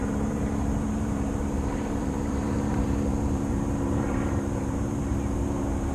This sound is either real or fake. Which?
fake